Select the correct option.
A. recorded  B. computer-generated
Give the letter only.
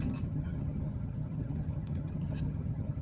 B